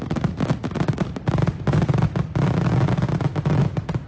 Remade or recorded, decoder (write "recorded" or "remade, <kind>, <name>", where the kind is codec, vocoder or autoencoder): remade, vocoder, BigVGAN v2